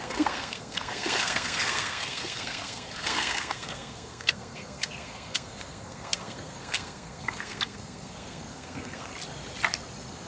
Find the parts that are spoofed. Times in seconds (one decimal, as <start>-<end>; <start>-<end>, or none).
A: 0.0-9.1